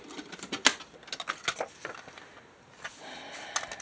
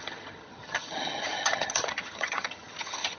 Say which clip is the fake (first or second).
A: second